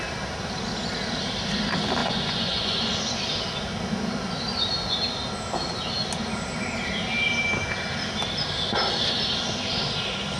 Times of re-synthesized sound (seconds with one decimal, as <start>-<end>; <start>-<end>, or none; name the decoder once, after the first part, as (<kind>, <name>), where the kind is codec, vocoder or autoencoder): 2.0-2.8 (vocoder, Vocos)